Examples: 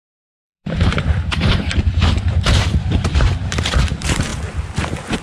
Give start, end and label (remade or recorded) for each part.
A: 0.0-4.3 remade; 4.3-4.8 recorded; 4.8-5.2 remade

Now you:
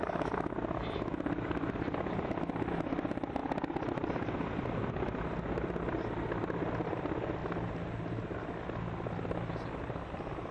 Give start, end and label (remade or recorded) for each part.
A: 0.0-3.4 remade; 3.4-3.9 recorded; 3.9-7.4 remade; 7.4-9.8 recorded; 9.8-10.5 remade

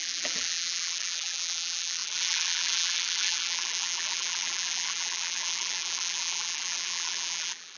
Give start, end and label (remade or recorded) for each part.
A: 0.0-7.8 remade

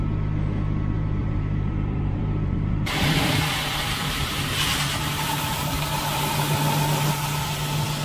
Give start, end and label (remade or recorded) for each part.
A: 0.0-1.2 recorded; 1.2-3.6 remade; 3.6-4.0 recorded; 4.0-6.0 remade; 6.0-8.0 recorded

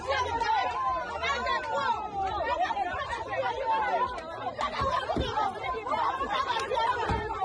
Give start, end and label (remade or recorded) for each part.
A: 0.0-0.6 recorded; 0.6-3.1 remade; 3.1-4.5 recorded; 4.5-6.8 remade; 6.8-7.4 recorded

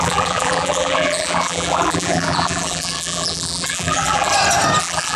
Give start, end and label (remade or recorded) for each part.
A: 0.0-4.3 remade; 4.3-4.8 recorded; 4.8-5.2 remade

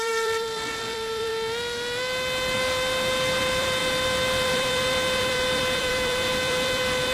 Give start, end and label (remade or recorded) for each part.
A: 0.0-1.3 remade; 1.3-3.4 recorded; 3.4-7.1 remade

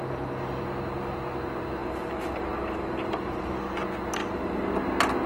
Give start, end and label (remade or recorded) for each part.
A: 0.0-1.8 recorded; 1.8-3.6 remade; 3.6-4.2 recorded; 4.2-4.7 remade; 4.7-5.3 recorded